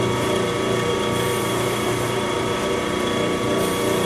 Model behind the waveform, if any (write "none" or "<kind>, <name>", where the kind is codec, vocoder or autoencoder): none